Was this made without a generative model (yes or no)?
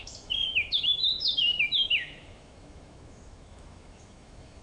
no